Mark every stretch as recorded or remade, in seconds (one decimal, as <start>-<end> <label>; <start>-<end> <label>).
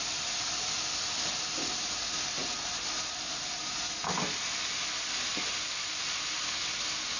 0.0-7.2 recorded